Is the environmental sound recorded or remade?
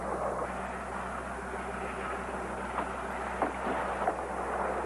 recorded